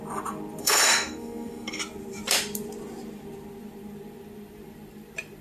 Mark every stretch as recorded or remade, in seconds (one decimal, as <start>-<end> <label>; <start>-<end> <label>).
0.0-0.6 recorded; 0.6-1.8 remade; 1.8-5.4 recorded